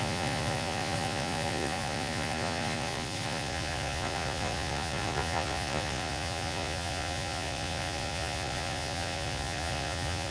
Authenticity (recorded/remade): remade